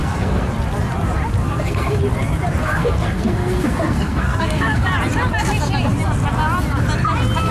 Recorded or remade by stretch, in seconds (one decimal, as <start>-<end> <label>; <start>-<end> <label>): 0.0-0.5 remade; 0.5-1.4 recorded; 1.4-2.0 remade; 2.0-2.6 recorded; 2.6-4.9 remade; 4.9-7.5 recorded